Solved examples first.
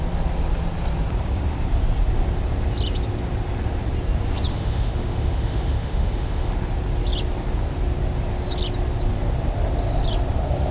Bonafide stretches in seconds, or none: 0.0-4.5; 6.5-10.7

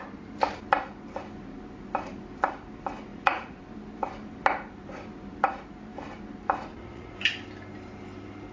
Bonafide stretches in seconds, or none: 0.0-3.1; 3.6-6.7; 7.2-8.5

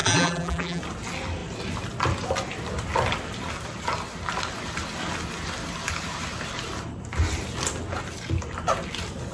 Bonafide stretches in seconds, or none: 0.8-9.3

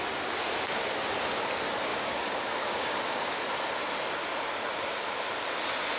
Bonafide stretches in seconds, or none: 0.0-1.9; 3.4-6.0

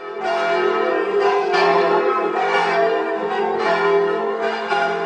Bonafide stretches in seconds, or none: 0.0-0.9; 3.6-4.2